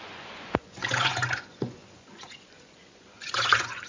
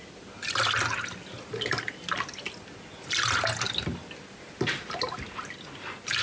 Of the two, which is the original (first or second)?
second